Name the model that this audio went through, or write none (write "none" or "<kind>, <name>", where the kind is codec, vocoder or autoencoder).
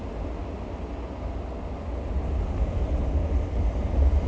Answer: none